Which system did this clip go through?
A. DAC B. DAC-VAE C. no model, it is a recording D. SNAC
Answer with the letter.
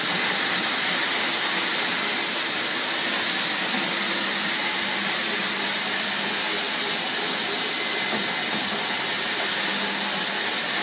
C